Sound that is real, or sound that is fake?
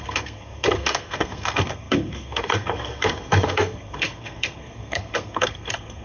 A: fake